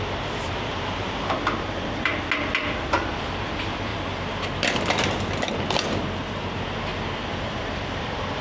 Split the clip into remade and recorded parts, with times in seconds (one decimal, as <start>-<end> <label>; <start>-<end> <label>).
0.0-2.1 remade; 2.1-2.7 recorded; 2.7-3.9 remade; 3.9-7.3 recorded; 7.3-8.4 remade